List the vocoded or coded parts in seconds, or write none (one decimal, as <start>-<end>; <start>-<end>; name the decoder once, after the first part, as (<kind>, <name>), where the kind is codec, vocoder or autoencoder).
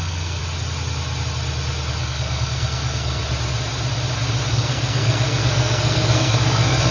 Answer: 0.0-0.4 (codec, SNAC); 2.0-3.2; 4.5-6.9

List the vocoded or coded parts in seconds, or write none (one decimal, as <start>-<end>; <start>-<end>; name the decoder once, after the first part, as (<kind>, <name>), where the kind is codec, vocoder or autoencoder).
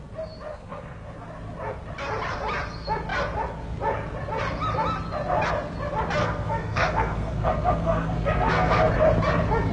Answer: 0.5-1.1 (codec, SNAC); 6.2-8.9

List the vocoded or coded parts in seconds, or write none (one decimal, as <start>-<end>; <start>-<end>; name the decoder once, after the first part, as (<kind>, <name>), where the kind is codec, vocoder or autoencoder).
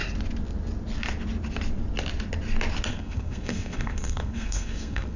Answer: 2.9-5.2 (codec, SNAC)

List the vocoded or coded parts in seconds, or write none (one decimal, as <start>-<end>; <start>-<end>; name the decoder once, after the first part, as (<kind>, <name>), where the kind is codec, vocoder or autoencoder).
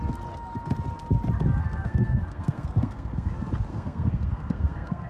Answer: 1.6-3.3 (codec, SNAC); 3.7-5.1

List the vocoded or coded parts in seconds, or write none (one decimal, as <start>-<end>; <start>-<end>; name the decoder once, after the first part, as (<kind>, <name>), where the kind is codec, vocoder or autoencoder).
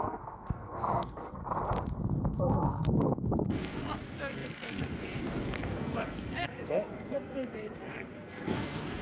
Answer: 0.0-1.4 (codec, SNAC); 2.4-9.0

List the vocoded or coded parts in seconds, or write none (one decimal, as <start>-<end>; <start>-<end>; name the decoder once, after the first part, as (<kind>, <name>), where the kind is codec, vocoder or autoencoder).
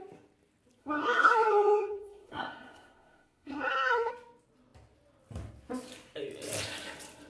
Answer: 0.8-4.1 (codec, SNAC)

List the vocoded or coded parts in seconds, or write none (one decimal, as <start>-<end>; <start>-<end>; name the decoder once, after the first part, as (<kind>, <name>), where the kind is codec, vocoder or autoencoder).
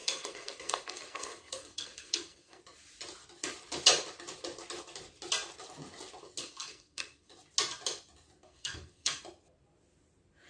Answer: 0.0-2.6 (codec, SNAC); 6.4-7.3; 8.4-9.2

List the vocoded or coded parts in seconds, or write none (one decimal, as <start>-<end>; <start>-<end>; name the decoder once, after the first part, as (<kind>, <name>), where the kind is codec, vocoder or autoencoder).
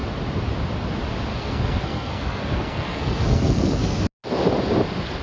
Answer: 1.3-4.0 (codec, SNAC)